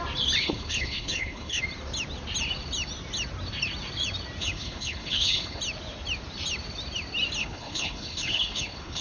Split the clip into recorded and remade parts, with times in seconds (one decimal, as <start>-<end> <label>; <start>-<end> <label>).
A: 0.0-0.4 recorded; 0.4-1.6 remade; 1.6-4.4 recorded; 4.4-5.6 remade; 5.6-7.4 recorded; 7.4-9.0 remade